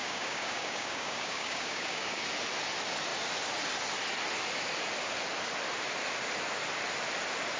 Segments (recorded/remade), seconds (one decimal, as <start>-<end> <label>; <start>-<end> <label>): 0.0-2.2 remade; 2.2-7.6 recorded